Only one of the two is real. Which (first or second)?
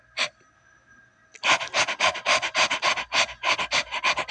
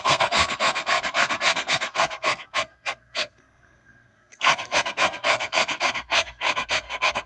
first